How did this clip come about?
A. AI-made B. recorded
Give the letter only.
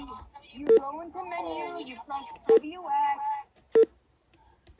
B